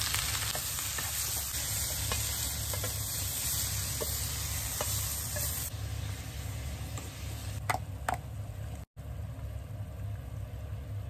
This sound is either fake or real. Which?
real